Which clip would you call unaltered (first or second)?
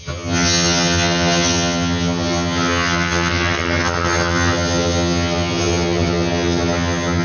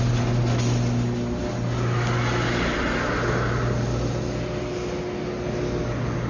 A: second